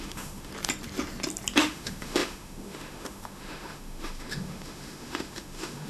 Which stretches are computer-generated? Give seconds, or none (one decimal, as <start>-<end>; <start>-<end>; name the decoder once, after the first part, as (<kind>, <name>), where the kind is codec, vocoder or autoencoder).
0.0-0.5 (autoencoder, DAC-VAE); 1.6-5.9